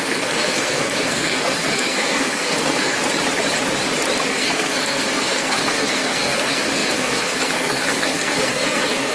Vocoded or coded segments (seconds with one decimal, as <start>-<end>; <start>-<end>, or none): 0.0-3.0; 4.3-9.1